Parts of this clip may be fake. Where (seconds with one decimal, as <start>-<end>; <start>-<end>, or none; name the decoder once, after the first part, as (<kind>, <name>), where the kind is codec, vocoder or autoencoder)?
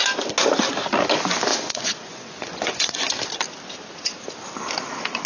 1.5-3.1 (vocoder, Vocos)